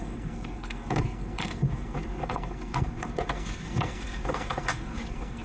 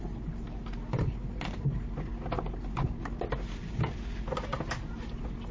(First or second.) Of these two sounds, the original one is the second